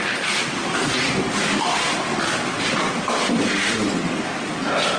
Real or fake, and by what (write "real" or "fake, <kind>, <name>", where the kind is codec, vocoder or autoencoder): fake, vocoder, BigVGAN v2